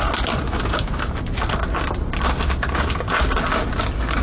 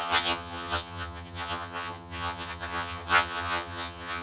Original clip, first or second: first